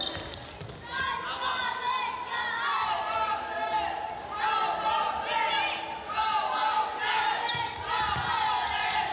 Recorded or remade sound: recorded